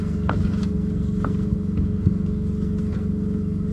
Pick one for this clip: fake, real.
fake